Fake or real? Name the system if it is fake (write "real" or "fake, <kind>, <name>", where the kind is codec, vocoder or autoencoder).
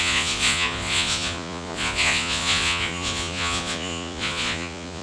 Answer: fake, vocoder, Vocos